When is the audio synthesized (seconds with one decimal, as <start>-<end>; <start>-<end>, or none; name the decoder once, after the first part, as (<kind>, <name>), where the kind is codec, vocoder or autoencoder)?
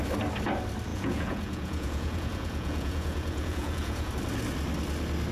0.9-4.1 (vocoder, Vocos)